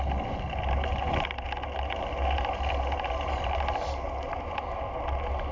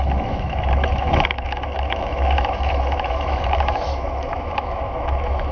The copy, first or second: second